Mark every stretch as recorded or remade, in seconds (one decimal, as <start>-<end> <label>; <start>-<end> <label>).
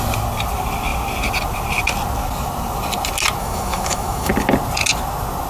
0.0-3.4 recorded; 3.4-4.3 remade; 4.3-5.5 recorded